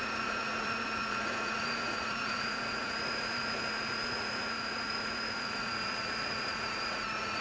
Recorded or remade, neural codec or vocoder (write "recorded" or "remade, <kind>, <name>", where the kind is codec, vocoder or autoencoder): remade, vocoder, Vocos